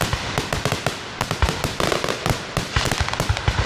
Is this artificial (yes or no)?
no